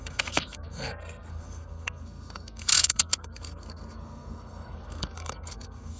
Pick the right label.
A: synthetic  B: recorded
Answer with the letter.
A